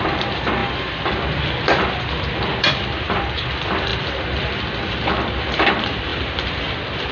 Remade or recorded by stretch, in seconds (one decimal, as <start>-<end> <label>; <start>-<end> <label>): 0.0-7.1 remade